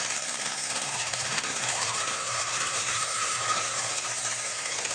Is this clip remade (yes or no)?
yes